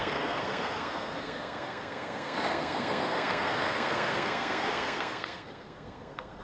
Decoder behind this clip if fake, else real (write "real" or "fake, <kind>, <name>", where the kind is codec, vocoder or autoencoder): fake, codec, SNAC